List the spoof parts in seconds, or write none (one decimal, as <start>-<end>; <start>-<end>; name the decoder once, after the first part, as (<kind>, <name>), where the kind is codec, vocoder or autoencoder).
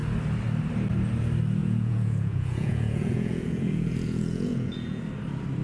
1.6-5.0 (vocoder, Vocos)